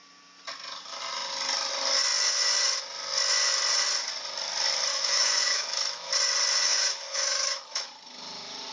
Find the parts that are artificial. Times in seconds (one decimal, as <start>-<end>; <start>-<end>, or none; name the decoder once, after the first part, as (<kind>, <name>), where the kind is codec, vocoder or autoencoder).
4.9-6.1 (autoencoder, DAC-VAE); 6.6-7.9